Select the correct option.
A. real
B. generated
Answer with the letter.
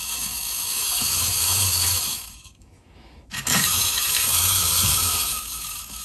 B